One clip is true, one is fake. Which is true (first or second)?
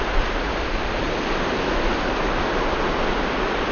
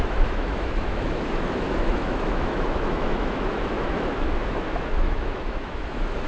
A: first